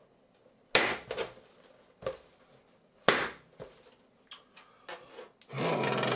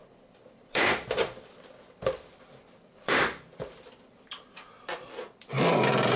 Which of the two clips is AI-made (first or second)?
second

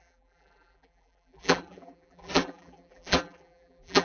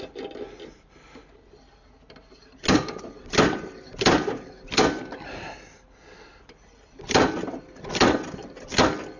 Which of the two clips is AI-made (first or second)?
first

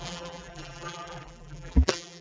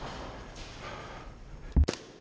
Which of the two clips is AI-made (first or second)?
first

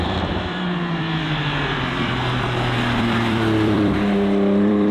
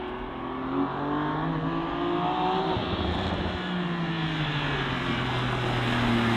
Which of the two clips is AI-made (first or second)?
first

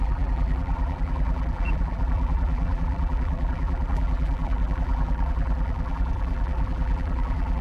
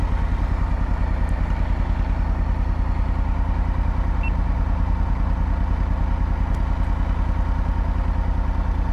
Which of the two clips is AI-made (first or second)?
first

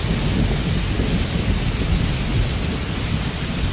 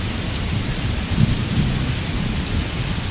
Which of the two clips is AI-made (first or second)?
second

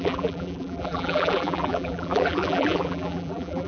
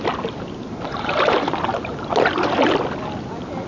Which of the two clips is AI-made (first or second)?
first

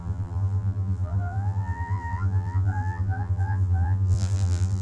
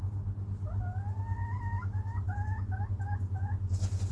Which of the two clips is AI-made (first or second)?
first